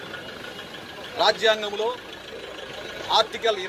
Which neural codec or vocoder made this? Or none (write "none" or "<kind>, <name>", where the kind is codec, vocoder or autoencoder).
none